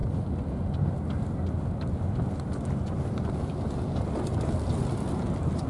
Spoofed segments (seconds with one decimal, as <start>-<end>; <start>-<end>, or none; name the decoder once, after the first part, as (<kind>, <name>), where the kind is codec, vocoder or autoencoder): none